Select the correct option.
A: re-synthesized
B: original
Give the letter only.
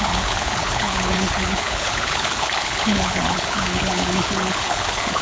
A